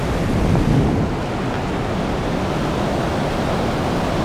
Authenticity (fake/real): real